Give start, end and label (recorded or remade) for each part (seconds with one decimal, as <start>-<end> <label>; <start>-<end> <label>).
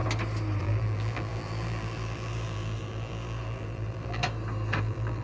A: 0.0-0.6 recorded; 0.6-4.2 remade; 4.2-4.8 recorded; 4.8-5.2 remade